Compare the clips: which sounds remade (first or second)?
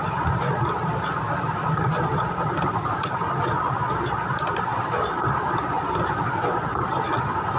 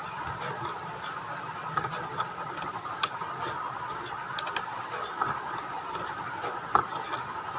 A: first